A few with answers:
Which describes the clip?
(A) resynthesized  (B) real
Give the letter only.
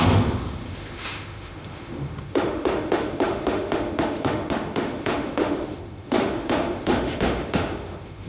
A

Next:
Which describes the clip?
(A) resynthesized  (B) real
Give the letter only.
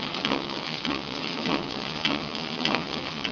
A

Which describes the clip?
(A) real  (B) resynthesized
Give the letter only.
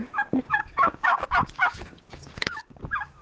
B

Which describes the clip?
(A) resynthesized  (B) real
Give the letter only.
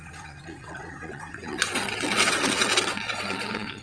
A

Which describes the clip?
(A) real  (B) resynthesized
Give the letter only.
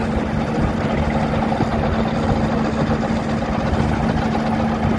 A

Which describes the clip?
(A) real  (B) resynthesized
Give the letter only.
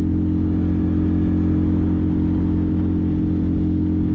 A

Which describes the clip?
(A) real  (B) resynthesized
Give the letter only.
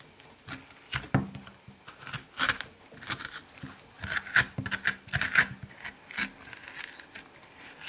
A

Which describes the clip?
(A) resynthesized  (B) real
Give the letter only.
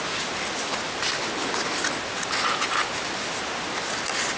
B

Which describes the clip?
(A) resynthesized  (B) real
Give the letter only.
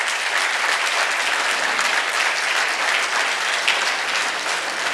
B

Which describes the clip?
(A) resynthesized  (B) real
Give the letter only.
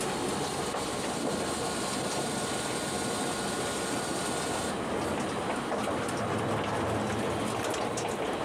B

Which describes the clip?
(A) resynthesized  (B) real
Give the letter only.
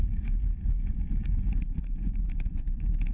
A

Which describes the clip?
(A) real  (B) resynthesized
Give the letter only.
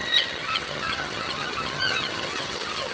B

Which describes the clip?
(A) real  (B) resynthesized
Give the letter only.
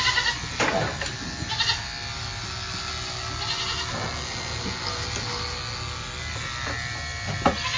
A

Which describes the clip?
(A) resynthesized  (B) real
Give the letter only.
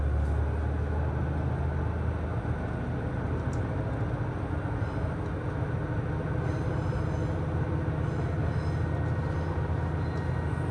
B